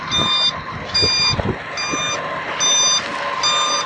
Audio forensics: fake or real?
real